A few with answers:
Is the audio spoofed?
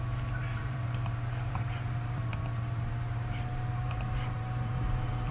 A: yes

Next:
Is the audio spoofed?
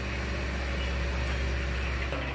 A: no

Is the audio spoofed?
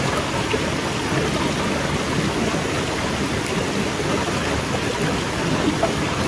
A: no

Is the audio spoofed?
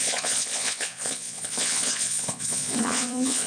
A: yes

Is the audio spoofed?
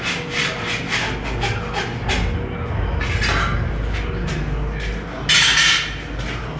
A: no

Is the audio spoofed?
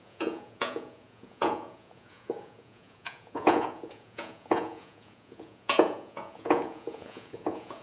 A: yes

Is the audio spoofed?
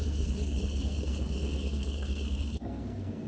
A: yes